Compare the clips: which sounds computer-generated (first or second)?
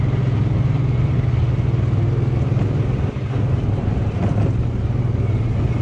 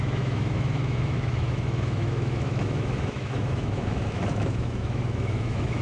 second